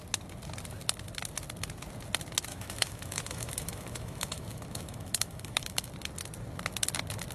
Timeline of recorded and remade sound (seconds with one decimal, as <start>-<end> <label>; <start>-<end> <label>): 0.0-2.5 recorded; 2.5-5.9 remade; 5.9-7.3 recorded